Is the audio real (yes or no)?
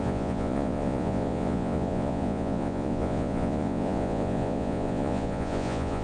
no